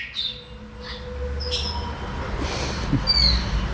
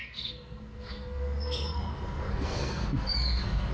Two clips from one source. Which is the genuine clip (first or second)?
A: first